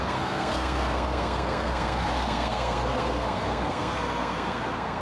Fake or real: fake